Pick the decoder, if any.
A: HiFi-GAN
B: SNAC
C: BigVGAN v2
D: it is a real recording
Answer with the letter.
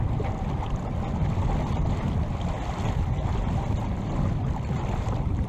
D